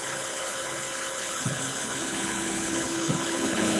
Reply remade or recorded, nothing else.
remade